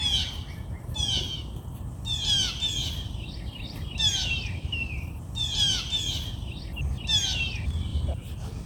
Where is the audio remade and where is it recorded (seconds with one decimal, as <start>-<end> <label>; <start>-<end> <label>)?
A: 0.0-2.8 recorded; 2.8-6.3 remade; 6.3-7.9 recorded; 7.9-8.7 remade